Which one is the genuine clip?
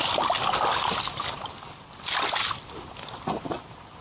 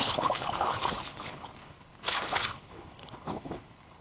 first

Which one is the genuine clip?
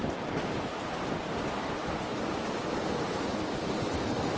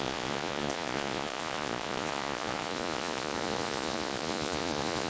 first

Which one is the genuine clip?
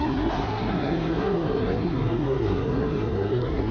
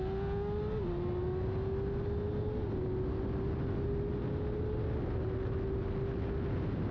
second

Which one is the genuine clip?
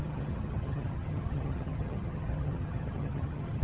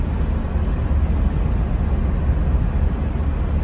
second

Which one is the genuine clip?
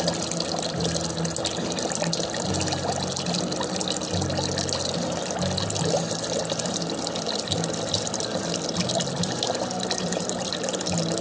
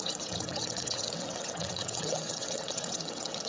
first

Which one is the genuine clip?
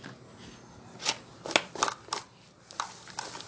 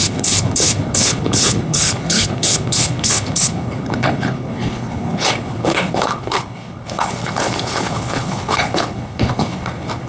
first